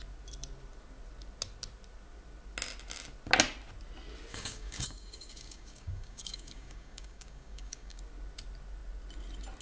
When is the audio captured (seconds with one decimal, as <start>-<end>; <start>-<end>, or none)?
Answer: 0.0-4.3; 8.0-9.6

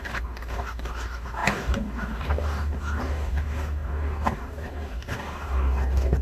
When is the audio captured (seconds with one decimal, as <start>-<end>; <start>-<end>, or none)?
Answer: none

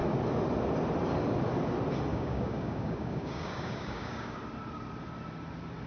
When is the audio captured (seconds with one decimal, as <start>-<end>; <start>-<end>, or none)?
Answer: 0.0-2.1; 4.4-5.9